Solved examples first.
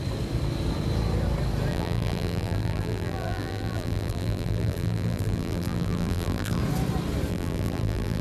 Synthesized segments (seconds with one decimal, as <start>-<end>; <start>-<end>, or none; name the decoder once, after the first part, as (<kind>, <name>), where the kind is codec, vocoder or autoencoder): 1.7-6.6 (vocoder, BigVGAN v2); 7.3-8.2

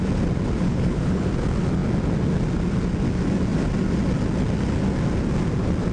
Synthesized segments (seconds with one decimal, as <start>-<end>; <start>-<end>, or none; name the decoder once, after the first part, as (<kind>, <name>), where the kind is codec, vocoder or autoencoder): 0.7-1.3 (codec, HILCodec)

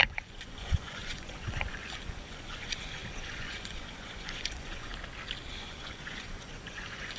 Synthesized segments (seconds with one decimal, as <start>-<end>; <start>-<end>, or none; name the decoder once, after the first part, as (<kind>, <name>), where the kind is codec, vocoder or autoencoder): 0.0-4.9 (vocoder, Vocos); 5.5-7.2

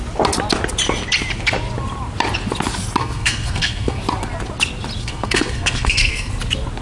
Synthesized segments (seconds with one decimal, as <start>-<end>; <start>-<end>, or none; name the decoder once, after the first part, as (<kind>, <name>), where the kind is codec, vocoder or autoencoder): 3.0-4.0 (codec, SNAC); 5.0-6.3

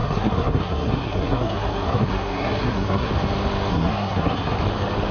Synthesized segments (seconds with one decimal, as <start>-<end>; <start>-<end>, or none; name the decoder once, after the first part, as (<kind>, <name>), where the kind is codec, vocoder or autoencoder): 0.0-3.1 (codec, SNAC); 3.7-4.6